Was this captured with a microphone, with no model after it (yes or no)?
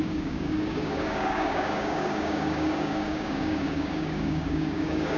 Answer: no